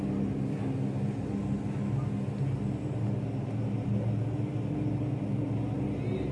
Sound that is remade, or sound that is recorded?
recorded